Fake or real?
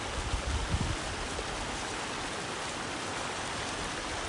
real